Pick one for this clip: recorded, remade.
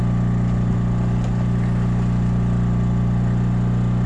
recorded